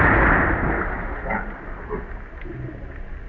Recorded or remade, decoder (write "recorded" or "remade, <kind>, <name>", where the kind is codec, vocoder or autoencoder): recorded